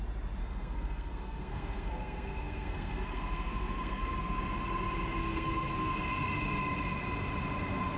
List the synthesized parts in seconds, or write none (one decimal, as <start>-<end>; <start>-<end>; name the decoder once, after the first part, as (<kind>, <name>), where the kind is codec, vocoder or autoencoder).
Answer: 0.4-4.4 (codec, SNAC); 5.2-5.9